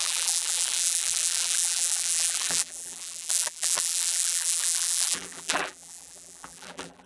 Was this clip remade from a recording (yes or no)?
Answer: yes